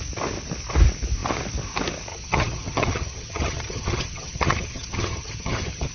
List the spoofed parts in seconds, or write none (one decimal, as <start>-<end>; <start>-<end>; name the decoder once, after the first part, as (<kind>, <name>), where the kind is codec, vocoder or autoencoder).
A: 2.1-5.9 (vocoder, HiFi-GAN)